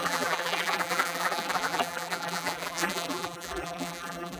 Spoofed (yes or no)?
yes